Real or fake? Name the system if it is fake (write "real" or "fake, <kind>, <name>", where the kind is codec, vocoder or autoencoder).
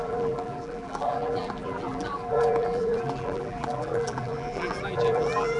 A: fake, vocoder, BigVGAN v2